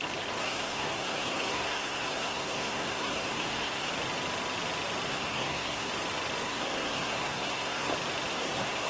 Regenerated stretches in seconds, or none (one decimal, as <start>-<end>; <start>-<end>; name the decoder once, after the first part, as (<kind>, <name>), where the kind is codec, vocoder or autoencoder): 0.4-3.9 (codec, SNAC); 5.1-5.9; 6.4-7.9; 8.3-8.9

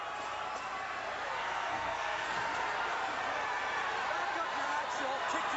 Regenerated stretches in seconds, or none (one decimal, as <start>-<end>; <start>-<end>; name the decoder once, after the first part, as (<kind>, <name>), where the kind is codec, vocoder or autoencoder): 1.4-2.4 (codec, SNAC)